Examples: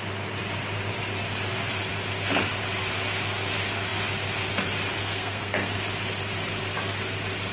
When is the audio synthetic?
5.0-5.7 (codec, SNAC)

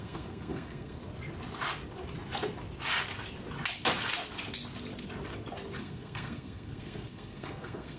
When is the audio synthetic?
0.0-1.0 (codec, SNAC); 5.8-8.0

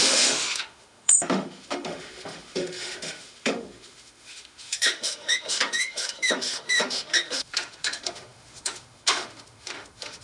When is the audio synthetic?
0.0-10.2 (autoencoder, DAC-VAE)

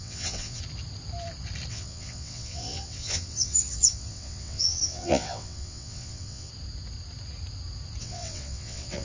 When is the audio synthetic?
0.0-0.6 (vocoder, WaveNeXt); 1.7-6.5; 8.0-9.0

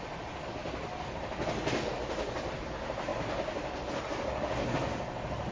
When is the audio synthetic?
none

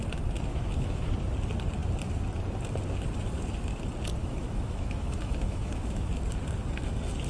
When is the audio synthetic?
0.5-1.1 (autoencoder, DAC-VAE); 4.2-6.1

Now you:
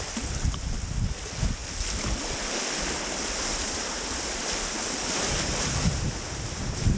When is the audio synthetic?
none

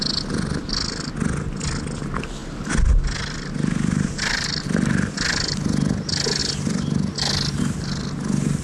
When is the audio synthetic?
none